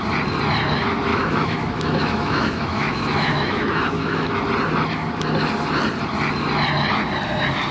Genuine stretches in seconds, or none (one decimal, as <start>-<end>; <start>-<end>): 0.0-1.1; 4.4-7.7